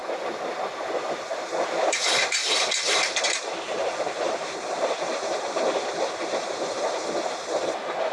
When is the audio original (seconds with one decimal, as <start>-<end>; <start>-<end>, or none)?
0.0-2.4; 7.0-8.1